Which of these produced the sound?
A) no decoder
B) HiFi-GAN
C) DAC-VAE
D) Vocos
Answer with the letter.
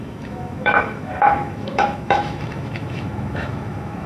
C